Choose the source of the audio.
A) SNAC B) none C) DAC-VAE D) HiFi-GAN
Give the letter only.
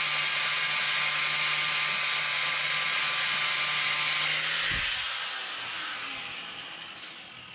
B